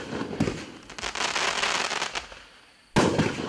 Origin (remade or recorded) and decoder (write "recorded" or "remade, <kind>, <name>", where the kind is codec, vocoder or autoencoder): recorded